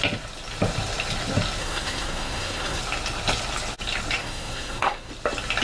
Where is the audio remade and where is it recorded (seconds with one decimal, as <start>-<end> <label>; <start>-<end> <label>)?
0.0-1.6 recorded; 1.6-2.8 remade; 2.8-4.2 recorded; 4.2-5.1 remade; 5.1-5.6 recorded